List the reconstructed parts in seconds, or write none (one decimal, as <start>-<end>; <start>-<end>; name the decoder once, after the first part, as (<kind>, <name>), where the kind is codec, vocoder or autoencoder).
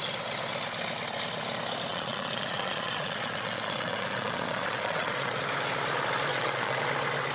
1.9-5.4 (vocoder, Vocos); 6.3-6.8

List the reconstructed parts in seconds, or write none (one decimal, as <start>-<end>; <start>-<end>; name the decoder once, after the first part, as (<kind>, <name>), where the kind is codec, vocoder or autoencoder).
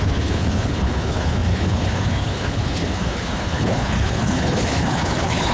0.0-5.5 (codec, HILCodec)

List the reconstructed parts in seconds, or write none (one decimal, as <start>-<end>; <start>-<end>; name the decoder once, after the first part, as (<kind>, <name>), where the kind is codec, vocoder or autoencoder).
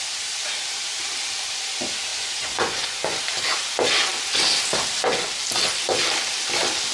2.1-3.2 (vocoder, Vocos)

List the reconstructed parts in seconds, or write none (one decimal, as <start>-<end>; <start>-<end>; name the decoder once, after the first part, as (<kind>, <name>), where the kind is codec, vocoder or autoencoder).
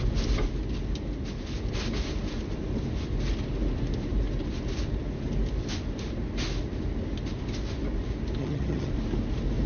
8.4-8.9 (vocoder, HiFi-GAN)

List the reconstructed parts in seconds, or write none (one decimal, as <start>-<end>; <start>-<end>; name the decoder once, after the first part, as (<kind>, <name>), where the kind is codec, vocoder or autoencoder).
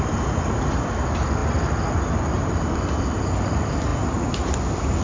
none